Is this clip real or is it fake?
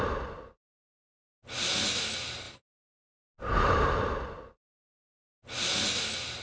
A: real